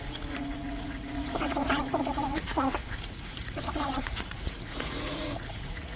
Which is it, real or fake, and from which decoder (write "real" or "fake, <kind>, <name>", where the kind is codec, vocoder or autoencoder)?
fake, vocoder, Vocos